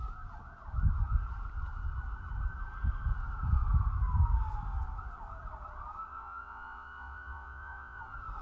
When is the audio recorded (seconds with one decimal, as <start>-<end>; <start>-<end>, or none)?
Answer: 0.0-6.1; 8.0-8.4